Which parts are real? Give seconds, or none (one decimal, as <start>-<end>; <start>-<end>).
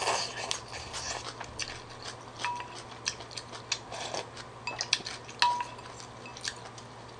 0.0-7.2